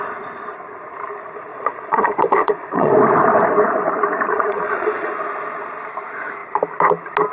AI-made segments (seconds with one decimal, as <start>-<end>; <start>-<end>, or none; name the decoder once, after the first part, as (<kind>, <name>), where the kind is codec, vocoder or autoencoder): 1.5-2.9 (vocoder, Vocos); 4.3-5.1